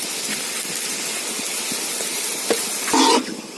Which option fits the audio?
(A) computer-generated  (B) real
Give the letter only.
B